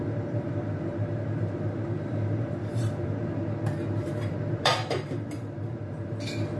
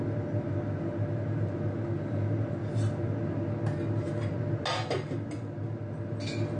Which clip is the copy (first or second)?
first